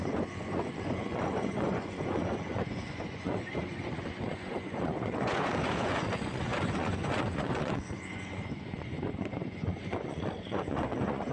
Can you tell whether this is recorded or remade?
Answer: remade